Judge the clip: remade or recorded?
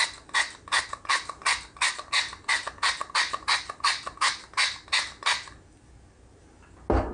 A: recorded